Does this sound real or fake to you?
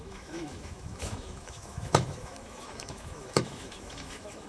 fake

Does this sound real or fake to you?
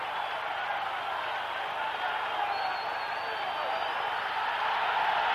real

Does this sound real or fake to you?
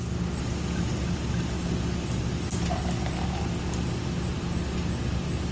real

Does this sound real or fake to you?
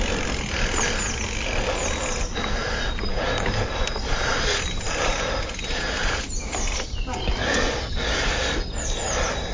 real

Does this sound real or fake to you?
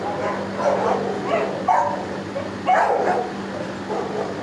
real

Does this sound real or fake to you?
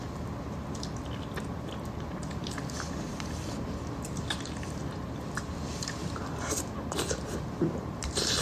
real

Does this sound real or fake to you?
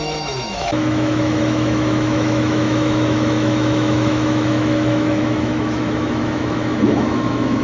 fake